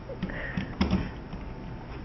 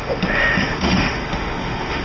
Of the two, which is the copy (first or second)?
second